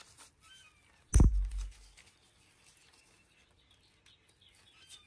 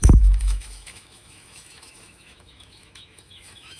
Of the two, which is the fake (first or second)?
second